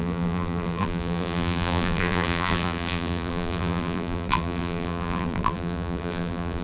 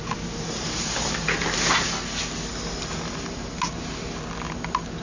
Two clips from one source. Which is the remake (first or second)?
first